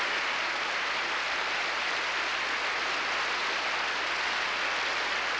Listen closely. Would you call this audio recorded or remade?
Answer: recorded